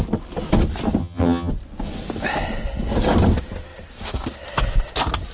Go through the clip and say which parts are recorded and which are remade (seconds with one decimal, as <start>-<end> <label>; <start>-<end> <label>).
0.0-1.0 recorded; 1.0-1.5 remade; 1.5-5.3 recorded

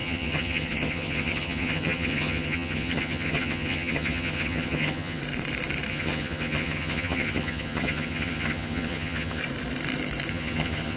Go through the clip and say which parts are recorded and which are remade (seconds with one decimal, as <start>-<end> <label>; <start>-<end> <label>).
0.0-5.2 remade; 5.2-5.9 recorded; 5.9-9.4 remade; 9.4-10.3 recorded; 10.3-11.0 remade